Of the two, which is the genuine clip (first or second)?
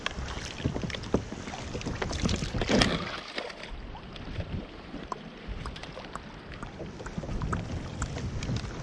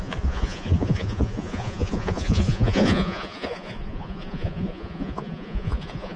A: first